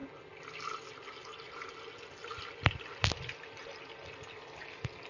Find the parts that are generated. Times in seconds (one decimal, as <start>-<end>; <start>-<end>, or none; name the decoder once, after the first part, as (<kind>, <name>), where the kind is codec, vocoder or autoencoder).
none

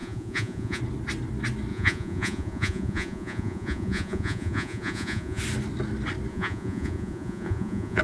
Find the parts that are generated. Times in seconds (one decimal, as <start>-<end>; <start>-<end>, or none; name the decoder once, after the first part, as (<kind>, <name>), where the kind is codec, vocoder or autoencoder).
0.0-0.8 (vocoder, Vocos); 1.7-5.4; 6.3-8.0

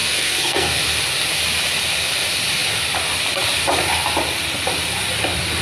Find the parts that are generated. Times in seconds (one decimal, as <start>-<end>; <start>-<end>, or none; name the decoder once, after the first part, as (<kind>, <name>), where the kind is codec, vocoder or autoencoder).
0.0-0.8 (codec, SNAC)

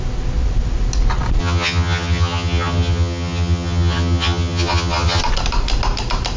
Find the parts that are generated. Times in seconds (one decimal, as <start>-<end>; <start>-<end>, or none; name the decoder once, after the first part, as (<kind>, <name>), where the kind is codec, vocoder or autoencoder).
1.4-5.2 (vocoder, HiFi-GAN)

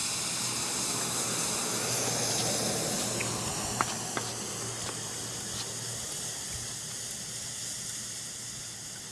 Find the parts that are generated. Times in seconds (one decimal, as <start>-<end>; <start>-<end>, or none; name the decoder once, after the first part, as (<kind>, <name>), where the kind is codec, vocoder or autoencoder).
none

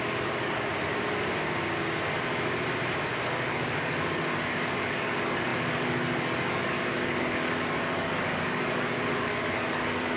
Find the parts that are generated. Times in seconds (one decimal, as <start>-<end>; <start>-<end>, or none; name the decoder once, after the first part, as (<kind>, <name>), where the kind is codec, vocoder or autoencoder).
0.0-0.7 (codec, DAC); 3.5-10.2